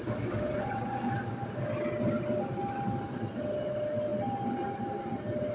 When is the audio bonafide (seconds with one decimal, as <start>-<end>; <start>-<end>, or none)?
0.0-0.5; 1.1-5.5